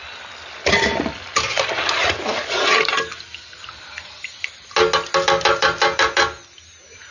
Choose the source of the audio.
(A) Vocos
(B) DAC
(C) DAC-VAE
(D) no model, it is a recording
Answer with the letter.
D